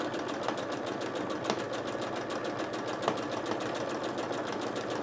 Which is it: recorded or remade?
recorded